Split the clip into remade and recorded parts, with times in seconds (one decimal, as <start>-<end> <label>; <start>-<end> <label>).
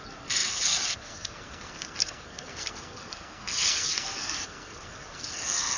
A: 0.0-5.8 remade